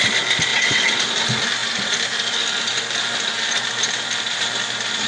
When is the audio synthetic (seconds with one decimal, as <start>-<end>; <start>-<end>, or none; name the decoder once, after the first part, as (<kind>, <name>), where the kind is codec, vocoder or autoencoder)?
0.5-1.0 (vocoder, WaveNeXt)